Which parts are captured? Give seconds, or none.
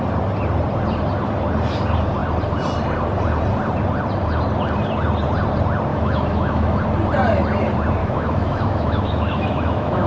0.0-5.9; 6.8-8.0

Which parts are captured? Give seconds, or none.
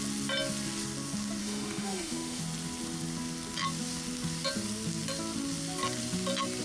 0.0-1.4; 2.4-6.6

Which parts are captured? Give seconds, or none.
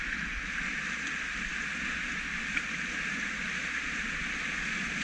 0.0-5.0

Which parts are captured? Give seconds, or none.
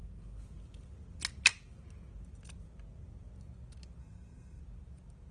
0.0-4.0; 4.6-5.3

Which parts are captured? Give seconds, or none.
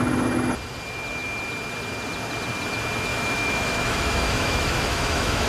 0.0-3.1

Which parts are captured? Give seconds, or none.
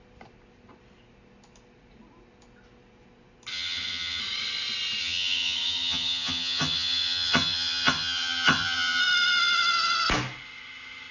0.0-3.5; 4.2-5.0; 9.0-11.1